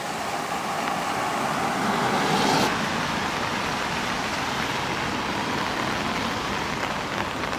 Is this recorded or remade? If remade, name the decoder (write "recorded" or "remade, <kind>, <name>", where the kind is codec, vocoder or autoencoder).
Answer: recorded